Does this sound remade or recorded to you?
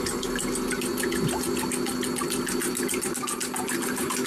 recorded